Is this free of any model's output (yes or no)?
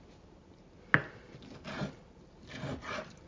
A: yes